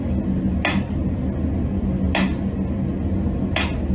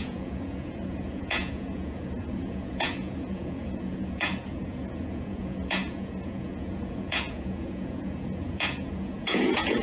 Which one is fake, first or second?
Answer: second